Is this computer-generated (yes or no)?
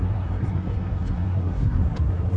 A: yes